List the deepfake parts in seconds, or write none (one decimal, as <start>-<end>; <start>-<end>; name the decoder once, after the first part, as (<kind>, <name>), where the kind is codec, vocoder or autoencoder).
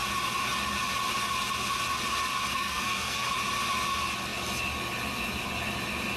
2.5-3.3 (codec, SNAC)